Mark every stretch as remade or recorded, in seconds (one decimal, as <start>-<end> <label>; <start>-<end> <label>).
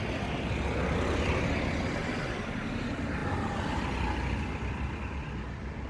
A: 0.0-2.0 recorded; 2.0-2.6 remade; 2.6-5.9 recorded